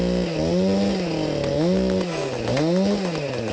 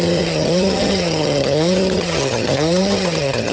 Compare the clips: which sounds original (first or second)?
first